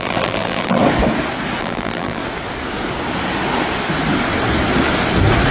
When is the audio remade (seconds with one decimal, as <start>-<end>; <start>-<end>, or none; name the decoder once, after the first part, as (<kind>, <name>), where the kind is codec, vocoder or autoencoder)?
0.0-0.8 (vocoder, BigVGAN v2); 1.6-2.2